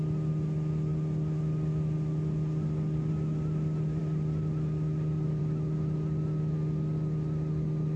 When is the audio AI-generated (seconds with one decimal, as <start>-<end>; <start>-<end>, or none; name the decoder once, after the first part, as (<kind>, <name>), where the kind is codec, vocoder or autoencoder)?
none